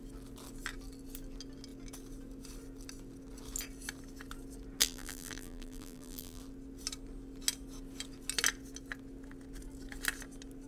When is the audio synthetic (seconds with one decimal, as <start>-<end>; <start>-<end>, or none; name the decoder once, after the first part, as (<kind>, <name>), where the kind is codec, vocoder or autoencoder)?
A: 4.8-6.4 (vocoder, BigVGAN v2)